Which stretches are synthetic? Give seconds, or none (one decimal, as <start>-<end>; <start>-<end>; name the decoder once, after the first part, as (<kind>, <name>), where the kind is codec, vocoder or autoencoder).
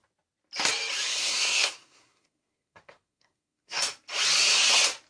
1.1-3.8 (codec, SNAC)